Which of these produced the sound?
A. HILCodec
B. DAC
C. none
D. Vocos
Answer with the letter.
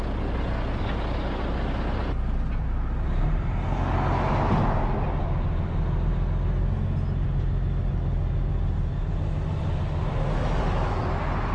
C